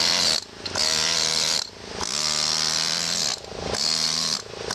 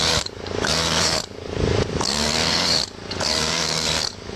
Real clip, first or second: first